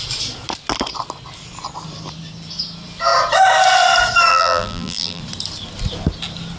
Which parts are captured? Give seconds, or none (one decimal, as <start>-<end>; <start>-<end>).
0.0-4.3; 5.2-6.6